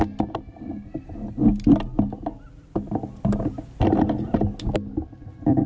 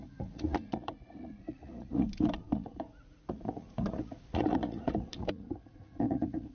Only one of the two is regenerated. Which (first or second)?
second